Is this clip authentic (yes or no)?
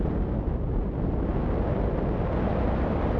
yes